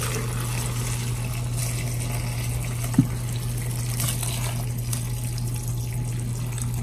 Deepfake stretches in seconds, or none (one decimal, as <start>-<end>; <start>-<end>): none

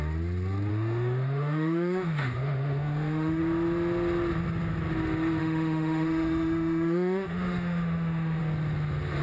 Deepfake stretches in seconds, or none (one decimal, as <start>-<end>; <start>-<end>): 0.7-3.4; 5.4-8.4

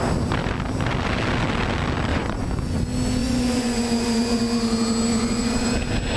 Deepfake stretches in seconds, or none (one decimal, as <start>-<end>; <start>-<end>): 2.1-2.8; 3.2-4.4; 5.1-5.7

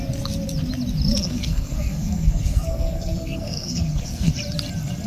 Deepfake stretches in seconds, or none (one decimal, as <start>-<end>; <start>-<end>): 1.2-4.3